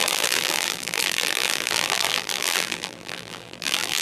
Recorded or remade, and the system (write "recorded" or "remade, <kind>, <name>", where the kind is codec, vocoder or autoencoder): remade, vocoder, BigVGAN v2